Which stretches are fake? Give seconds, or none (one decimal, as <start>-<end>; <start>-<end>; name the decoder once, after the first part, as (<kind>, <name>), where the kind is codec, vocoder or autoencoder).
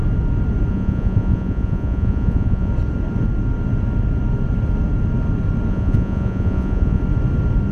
0.7-2.7 (vocoder, Vocos); 5.7-7.0